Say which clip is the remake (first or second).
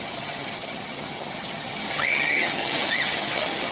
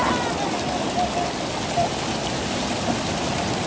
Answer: first